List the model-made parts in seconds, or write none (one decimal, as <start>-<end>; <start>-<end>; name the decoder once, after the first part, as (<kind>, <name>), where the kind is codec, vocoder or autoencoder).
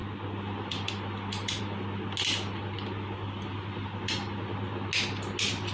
0.0-1.6 (vocoder, BigVGAN v2); 2.6-4.6